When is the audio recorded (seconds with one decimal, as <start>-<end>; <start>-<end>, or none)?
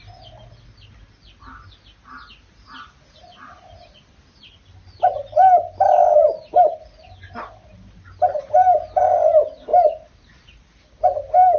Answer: 0.0-11.6